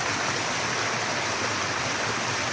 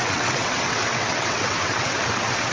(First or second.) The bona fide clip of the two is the first